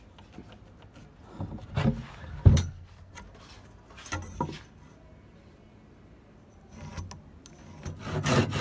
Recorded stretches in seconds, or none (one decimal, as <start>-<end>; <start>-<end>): 0.0-2.5; 3.1-8.6